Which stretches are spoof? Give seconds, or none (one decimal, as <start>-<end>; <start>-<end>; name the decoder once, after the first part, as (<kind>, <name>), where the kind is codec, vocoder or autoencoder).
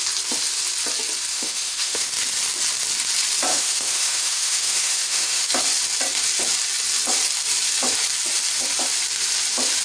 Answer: 1.3-2.1 (autoencoder, DAC-VAE); 3.5-5.5